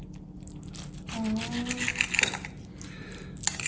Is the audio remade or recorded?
recorded